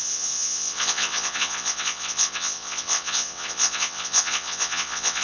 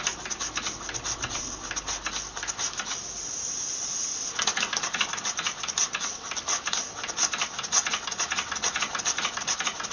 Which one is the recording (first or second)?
second